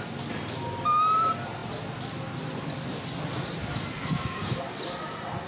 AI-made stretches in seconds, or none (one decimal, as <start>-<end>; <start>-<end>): 4.0-4.6